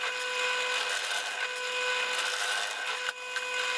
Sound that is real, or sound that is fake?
real